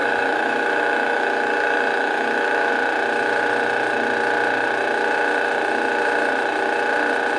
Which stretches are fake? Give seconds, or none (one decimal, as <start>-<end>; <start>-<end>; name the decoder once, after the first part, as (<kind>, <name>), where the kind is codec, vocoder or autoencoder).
0.0-2.7 (autoencoder, DAC-VAE)